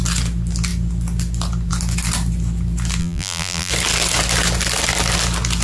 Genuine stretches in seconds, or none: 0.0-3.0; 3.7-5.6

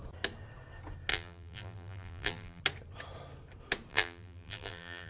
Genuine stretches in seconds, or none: 0.0-1.1; 2.6-3.9